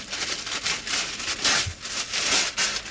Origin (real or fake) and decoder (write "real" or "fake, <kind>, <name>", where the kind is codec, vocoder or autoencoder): real